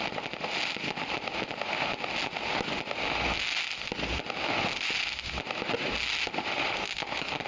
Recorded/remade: recorded